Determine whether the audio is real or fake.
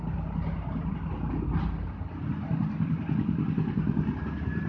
real